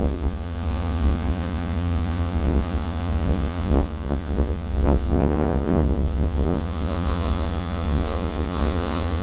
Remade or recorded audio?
remade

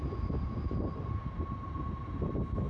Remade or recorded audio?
recorded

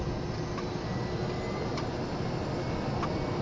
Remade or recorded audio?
recorded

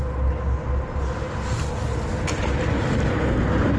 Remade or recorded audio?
recorded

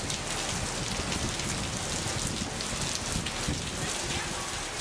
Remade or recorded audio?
recorded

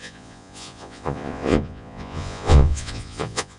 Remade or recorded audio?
remade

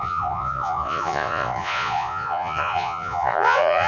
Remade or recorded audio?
remade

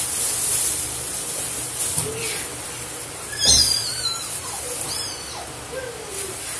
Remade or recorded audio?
recorded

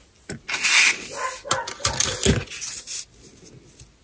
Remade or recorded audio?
recorded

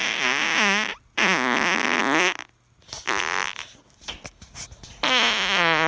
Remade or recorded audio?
recorded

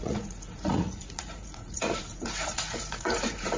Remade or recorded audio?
remade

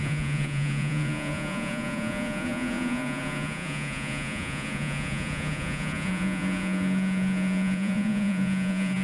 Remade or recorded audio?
remade